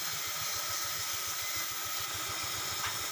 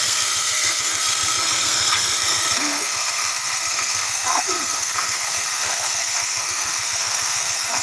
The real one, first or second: first